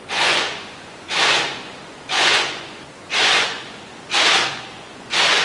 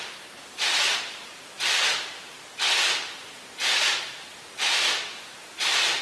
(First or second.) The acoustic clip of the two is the second